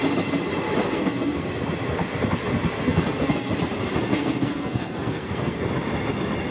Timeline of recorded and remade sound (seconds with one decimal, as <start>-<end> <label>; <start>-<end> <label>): 0.0-0.8 recorded; 0.8-1.5 remade; 1.5-2.8 recorded; 2.8-3.5 remade; 3.5-4.1 recorded; 4.1-5.6 remade; 5.6-6.5 recorded